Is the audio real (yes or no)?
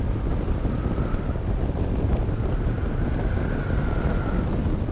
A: yes